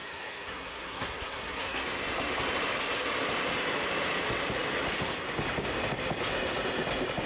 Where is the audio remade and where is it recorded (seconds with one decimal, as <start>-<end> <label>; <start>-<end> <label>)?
0.0-1.8 remade; 1.8-7.3 recorded